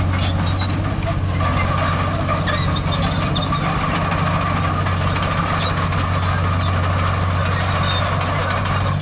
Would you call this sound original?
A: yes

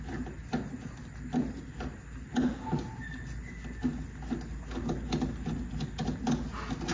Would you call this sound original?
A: yes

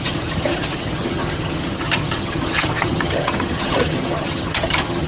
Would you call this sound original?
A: no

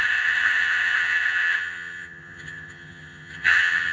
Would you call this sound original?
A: no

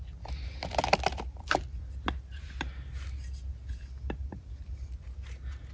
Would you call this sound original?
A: yes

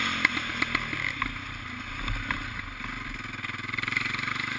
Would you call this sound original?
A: yes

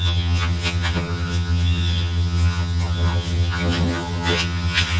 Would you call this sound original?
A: no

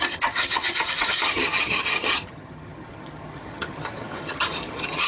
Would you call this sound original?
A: no